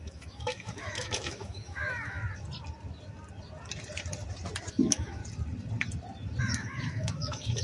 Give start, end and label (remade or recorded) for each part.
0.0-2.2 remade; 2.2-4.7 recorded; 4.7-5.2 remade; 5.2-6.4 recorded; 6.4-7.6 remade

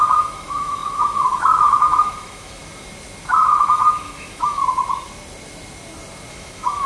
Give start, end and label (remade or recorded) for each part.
0.0-2.6 remade; 2.6-3.3 recorded; 3.3-4.6 remade; 4.6-6.3 recorded; 6.3-6.9 remade

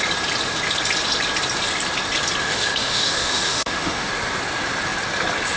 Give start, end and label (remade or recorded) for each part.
0.0-2.4 recorded; 2.4-4.1 remade; 4.1-5.6 recorded